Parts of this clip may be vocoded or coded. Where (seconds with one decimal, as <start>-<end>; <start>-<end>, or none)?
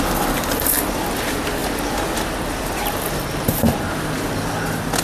none